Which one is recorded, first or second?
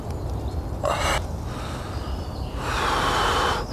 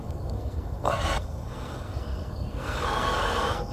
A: first